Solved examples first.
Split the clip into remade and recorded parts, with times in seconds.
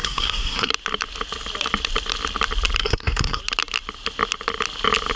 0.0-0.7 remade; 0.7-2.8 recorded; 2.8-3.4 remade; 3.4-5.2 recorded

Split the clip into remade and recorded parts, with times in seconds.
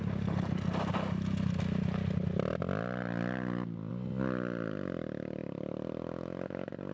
0.0-5.4 recorded; 5.4-5.9 remade; 5.9-6.9 recorded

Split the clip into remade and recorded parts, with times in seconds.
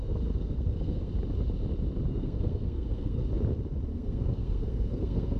0.0-1.1 remade; 1.1-2.1 recorded; 2.1-3.2 remade; 3.2-3.9 recorded; 3.9-5.4 remade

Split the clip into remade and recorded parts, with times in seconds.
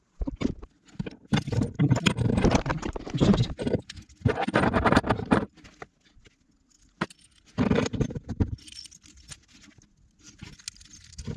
0.0-11.4 recorded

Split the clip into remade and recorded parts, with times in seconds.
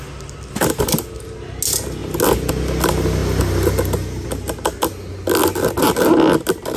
0.0-6.8 recorded